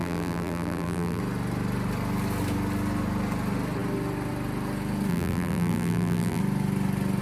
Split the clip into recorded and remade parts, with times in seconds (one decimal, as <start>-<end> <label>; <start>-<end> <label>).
0.0-1.2 remade; 1.2-5.1 recorded; 5.1-6.4 remade; 6.4-7.2 recorded